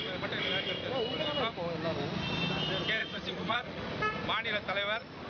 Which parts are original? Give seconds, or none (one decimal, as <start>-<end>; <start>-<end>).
0.0-3.0; 3.8-5.3